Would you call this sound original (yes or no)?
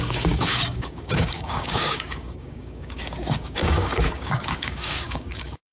no